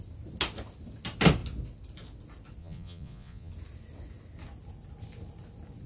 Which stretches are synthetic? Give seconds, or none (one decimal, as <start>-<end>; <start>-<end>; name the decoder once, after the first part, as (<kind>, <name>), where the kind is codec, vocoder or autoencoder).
2.6-3.5 (vocoder, Vocos)